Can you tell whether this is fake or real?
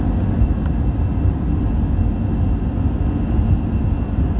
real